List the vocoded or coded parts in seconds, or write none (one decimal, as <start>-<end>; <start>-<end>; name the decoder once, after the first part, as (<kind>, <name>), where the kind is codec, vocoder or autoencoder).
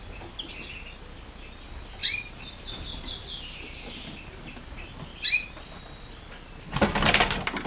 2.0-3.9 (vocoder, BigVGAN v2)